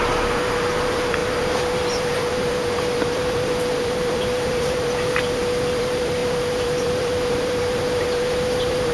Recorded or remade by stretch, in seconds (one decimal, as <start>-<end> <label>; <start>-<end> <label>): 0.0-8.9 remade